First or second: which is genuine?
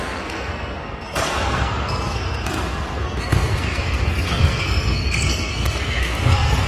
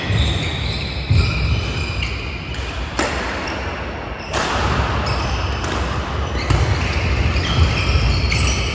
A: second